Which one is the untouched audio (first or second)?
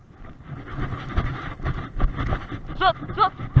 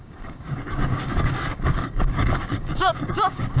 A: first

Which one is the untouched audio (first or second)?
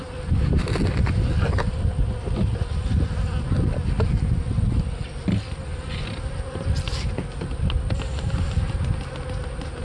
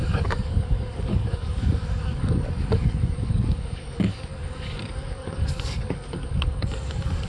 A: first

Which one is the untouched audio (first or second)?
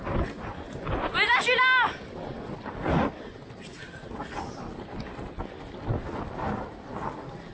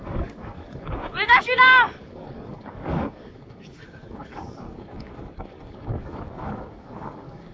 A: first